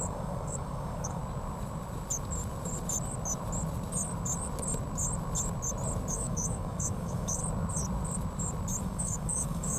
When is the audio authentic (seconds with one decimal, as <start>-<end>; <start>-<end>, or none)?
1.2-6.1; 7.4-8.8